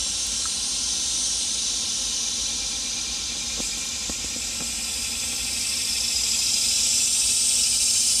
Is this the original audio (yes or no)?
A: yes